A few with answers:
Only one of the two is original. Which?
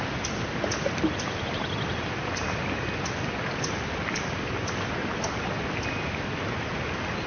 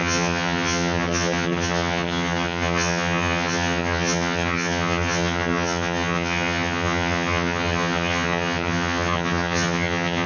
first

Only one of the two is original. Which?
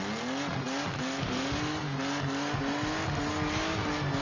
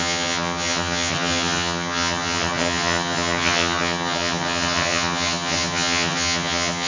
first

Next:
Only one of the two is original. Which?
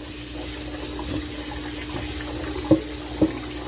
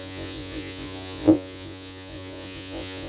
first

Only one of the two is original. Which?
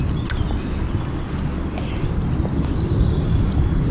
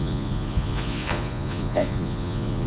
first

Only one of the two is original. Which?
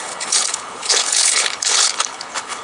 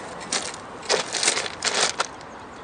second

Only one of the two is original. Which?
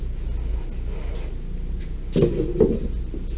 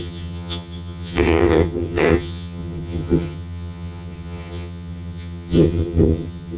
first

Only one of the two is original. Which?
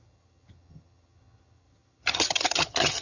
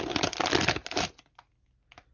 second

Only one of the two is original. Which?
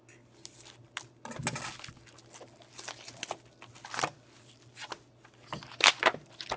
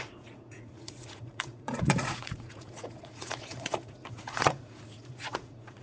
first